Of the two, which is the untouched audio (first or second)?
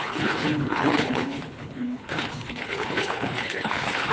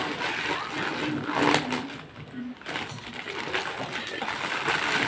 second